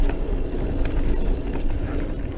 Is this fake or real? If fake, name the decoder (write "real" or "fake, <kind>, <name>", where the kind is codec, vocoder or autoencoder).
real